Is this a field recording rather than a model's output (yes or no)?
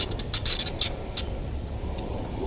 yes